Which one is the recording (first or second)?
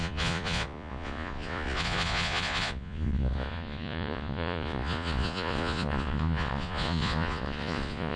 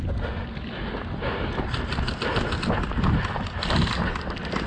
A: second